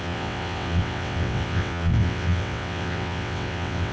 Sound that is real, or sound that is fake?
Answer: fake